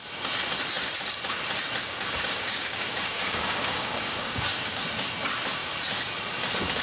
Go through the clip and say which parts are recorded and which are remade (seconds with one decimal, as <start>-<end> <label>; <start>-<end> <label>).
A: 0.0-1.8 recorded; 1.8-4.8 remade; 4.8-6.8 recorded